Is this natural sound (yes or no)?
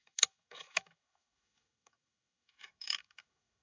no